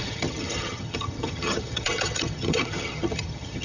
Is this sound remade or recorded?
remade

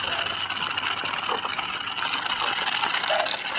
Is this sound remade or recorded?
recorded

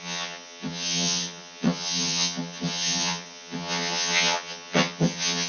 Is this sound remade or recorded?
remade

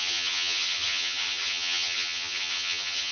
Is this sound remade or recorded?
remade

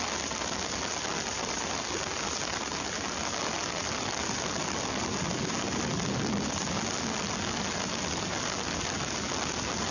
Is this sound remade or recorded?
recorded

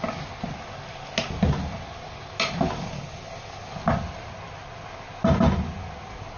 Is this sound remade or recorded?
recorded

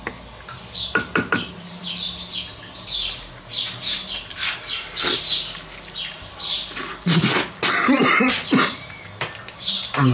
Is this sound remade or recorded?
recorded